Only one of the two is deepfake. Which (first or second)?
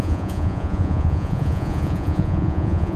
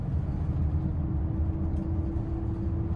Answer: first